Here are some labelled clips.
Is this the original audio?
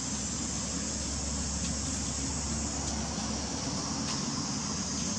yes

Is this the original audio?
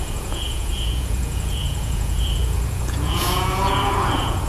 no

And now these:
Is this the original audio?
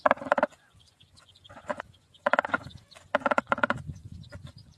no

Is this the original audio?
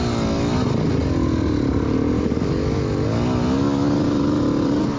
yes